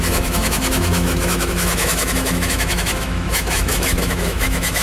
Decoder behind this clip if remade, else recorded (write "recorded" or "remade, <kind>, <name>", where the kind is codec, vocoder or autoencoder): remade, autoencoder, DAC-VAE